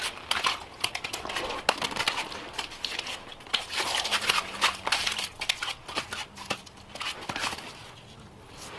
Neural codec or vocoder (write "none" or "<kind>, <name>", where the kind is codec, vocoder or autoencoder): none